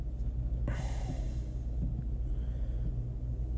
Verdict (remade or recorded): recorded